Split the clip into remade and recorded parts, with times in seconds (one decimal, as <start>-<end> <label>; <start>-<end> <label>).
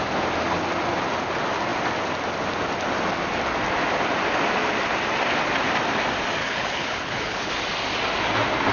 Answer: 0.0-6.4 recorded; 6.4-7.5 remade; 7.5-8.7 recorded